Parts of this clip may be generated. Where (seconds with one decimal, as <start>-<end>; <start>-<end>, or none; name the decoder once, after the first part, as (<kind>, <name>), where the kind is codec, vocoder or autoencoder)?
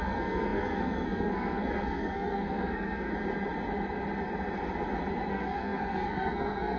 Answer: 0.0-3.1 (codec, SNAC); 5.3-6.8